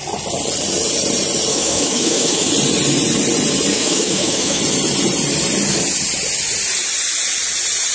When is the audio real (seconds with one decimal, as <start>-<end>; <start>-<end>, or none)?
0.0-1.5; 2.5-3.7; 4.6-7.9